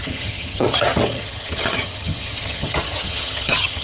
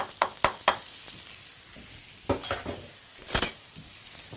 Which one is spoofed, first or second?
first